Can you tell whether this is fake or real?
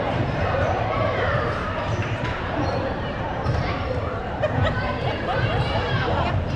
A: fake